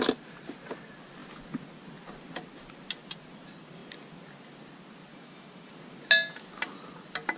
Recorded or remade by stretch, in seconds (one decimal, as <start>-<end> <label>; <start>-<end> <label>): 0.0-5.1 recorded; 5.1-5.7 remade; 5.7-7.4 recorded

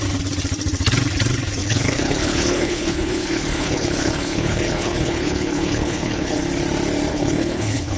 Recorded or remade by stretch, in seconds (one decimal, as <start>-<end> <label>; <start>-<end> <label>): 0.0-1.6 recorded; 1.6-6.4 remade; 6.4-7.1 recorded; 7.1-8.0 remade

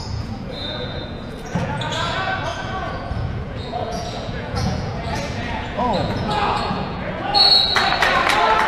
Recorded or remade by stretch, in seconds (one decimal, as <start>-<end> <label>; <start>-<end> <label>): 0.0-7.8 remade; 7.8-8.7 recorded

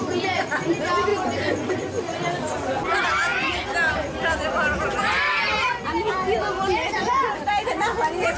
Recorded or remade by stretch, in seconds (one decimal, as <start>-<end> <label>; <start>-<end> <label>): 0.0-8.4 recorded

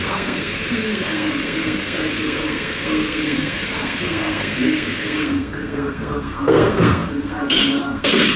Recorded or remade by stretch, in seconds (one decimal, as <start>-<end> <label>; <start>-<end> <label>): 0.0-8.4 remade

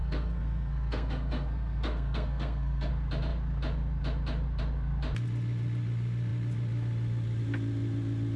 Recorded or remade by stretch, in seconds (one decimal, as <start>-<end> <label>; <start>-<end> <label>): 0.0-2.9 remade; 2.9-8.4 recorded